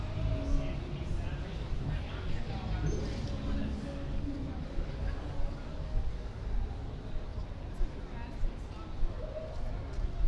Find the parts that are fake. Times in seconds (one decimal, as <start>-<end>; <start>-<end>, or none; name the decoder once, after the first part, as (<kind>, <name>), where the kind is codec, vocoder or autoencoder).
1.4-2.5 (codec, DAC); 3.6-6.4